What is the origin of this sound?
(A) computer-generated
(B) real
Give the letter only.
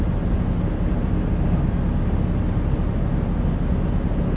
B